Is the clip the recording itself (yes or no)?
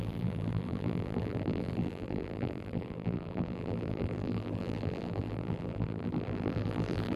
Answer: no